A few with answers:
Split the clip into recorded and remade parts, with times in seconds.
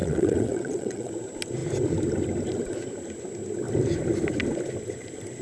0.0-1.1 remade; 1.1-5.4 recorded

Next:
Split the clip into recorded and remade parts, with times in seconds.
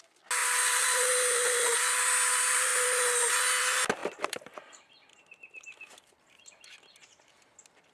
0.0-0.4 recorded; 0.4-1.1 remade; 1.1-4.0 recorded; 4.0-6.1 remade; 6.1-7.9 recorded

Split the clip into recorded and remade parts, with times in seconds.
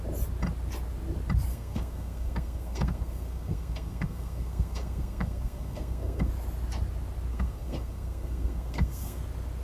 0.0-1.5 recorded; 1.5-6.3 remade; 6.3-7.3 recorded; 7.3-9.2 remade; 9.2-9.6 recorded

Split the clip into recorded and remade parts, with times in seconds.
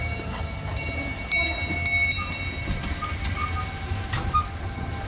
0.0-5.1 recorded